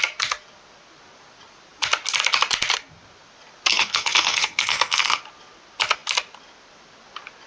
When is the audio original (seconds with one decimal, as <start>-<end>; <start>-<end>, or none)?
0.0-3.7; 5.2-7.5